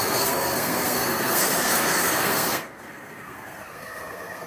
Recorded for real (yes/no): no